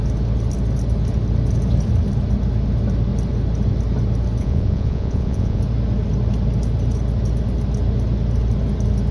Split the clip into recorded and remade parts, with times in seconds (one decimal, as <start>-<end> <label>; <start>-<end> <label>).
0.0-4.4 recorded; 4.4-5.6 remade; 5.6-9.1 recorded